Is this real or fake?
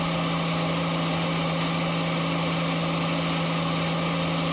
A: real